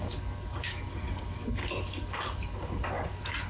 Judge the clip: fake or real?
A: fake